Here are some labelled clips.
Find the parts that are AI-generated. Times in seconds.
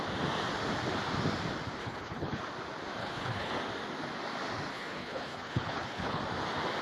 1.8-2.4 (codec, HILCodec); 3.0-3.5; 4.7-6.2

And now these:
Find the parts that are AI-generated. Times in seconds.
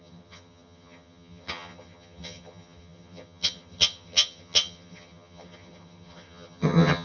0.0-7.0 (vocoder, HiFi-GAN)